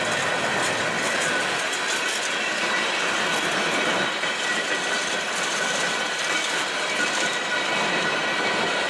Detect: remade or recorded remade